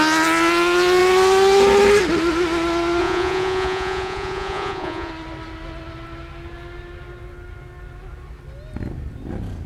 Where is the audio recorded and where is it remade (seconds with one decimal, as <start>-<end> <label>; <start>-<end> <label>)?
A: 0.0-3.0 recorded; 3.0-5.1 remade; 5.1-9.7 recorded

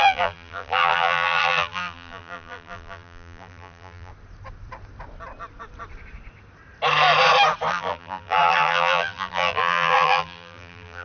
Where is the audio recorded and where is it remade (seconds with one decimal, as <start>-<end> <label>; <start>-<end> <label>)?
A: 0.0-4.1 remade; 4.1-7.7 recorded; 7.7-11.0 remade

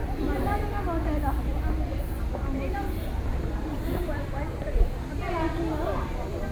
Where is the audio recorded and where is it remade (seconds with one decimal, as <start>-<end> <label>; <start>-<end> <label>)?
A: 0.0-0.6 remade; 0.6-6.5 recorded

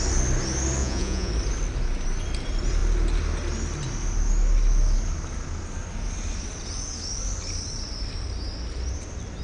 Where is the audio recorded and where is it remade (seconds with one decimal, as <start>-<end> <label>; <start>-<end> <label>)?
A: 0.0-0.8 recorded; 0.8-1.3 remade; 1.3-9.4 recorded

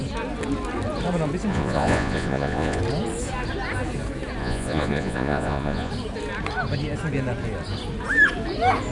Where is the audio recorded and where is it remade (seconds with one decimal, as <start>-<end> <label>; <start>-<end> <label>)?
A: 0.0-1.5 recorded; 1.5-2.8 remade; 2.8-4.4 recorded; 4.4-5.9 remade; 5.9-8.9 recorded

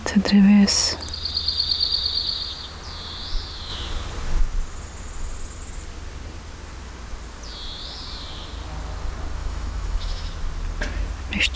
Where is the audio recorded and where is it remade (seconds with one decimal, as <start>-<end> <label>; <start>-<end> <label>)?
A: 0.0-9.4 recorded; 9.4-10.3 remade; 10.3-11.6 recorded

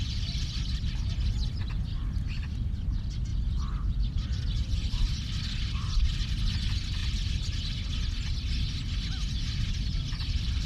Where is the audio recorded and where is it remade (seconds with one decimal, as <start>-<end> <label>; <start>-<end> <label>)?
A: 0.0-3.3 remade; 3.3-3.9 recorded; 3.9-7.0 remade; 7.0-9.7 recorded; 9.7-10.7 remade

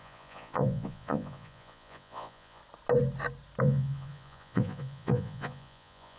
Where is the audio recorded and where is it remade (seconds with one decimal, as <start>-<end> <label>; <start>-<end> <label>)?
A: 0.0-2.6 remade; 2.6-3.6 recorded; 3.6-6.2 remade